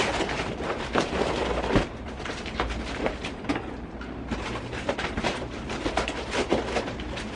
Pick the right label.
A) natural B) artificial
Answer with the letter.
B